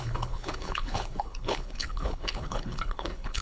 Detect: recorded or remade remade